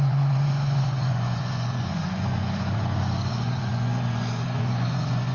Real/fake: fake